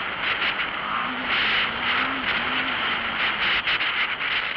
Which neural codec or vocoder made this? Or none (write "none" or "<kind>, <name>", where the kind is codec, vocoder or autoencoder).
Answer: none